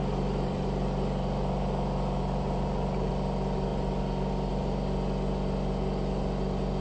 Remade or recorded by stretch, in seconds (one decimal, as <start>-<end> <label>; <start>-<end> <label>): 0.0-3.1 remade; 3.1-6.8 recorded